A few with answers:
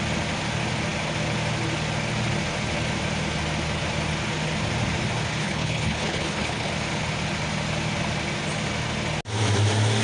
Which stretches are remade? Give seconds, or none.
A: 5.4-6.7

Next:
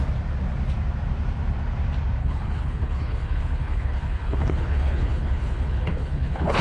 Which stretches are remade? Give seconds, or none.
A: 2.2-6.6